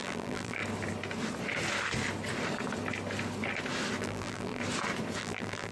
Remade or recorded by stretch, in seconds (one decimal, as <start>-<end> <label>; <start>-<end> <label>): 0.0-0.6 remade; 0.6-4.0 recorded; 4.0-4.6 remade; 4.6-5.2 recorded; 5.2-5.7 remade